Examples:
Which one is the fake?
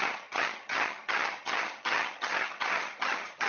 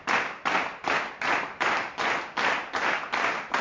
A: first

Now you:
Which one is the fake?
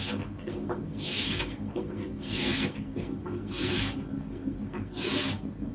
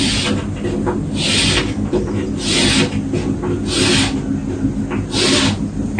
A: first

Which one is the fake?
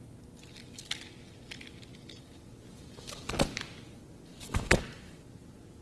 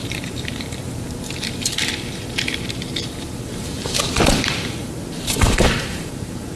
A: second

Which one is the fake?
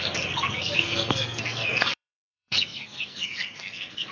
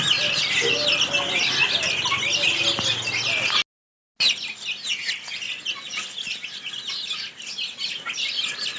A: first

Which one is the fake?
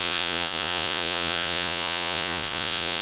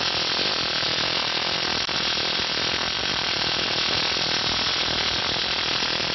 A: first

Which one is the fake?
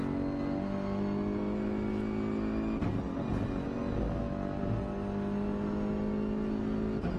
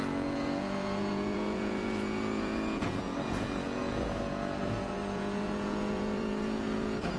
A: second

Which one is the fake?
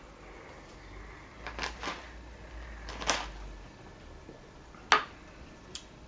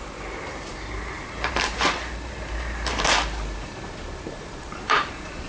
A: second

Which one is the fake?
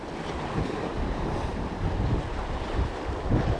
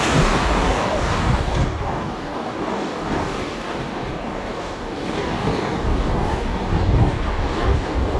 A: second